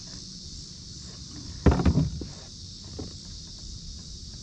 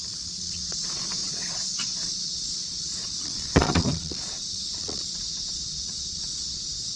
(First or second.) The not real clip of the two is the second